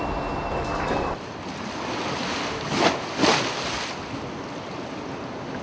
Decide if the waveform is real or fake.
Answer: real